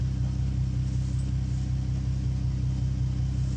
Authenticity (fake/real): real